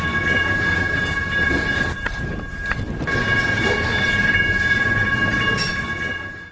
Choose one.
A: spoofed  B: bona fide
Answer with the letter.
B